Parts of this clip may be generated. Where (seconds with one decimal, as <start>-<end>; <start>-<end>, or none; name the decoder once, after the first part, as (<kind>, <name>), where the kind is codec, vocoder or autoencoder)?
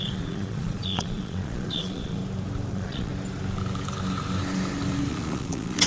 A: 0.0-2.2 (vocoder, Vocos); 2.7-3.1; 5.1-5.9